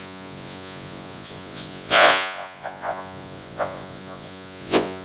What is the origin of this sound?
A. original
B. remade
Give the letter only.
B